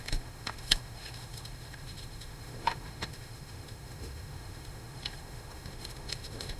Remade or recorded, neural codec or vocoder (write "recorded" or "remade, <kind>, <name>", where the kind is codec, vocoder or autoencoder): remade, autoencoder, DAC-VAE